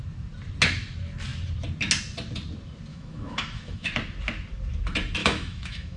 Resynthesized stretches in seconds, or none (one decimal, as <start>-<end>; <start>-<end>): 2.9-3.9; 5.2-6.0